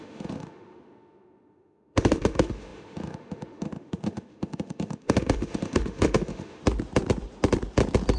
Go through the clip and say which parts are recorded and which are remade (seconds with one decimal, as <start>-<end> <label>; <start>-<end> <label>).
0.0-6.6 remade; 6.6-8.2 recorded